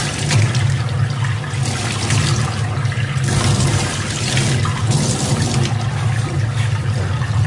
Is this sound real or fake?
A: real